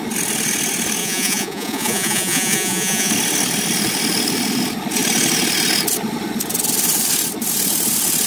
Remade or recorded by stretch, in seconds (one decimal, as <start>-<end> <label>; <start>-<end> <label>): 0.0-1.0 recorded; 1.0-3.1 remade; 3.1-8.3 recorded